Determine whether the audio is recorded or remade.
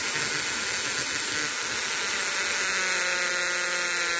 recorded